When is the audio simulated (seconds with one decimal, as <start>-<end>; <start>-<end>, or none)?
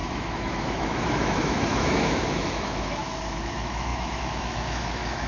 0.0-5.3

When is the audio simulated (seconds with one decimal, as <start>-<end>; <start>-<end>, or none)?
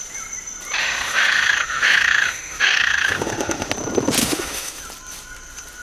0.8-3.7; 4.2-4.8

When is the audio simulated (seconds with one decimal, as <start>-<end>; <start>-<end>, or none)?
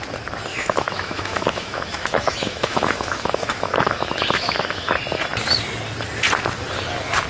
0.5-4.9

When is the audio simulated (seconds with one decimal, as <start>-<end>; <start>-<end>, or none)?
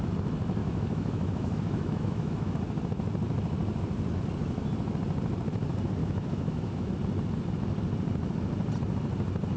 0.6-2.5; 6.0-6.9